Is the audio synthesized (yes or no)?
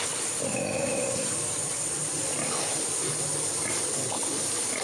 no